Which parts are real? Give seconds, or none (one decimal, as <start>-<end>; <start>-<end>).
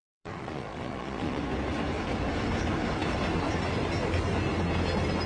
1.4-5.3